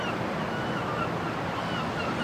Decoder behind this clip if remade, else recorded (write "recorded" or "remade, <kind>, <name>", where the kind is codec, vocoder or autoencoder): recorded